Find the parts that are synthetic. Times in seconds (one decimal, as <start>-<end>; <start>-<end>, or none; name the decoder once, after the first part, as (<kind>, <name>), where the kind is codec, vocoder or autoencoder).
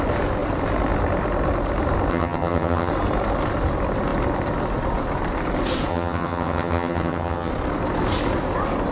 2.1-2.9 (vocoder, HiFi-GAN); 5.9-7.5